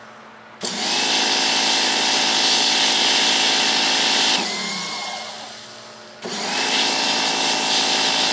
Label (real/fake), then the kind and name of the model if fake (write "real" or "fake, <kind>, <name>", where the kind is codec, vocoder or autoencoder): real